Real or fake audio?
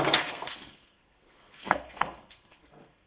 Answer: fake